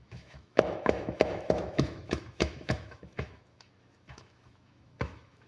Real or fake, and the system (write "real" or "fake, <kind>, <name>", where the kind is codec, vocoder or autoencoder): fake, autoencoder, DAC-VAE